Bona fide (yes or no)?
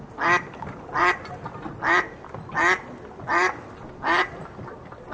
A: yes